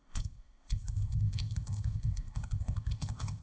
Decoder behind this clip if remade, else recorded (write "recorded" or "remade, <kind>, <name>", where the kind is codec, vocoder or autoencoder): remade, codec, ZipCodec